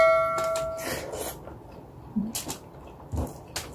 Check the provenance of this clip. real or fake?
real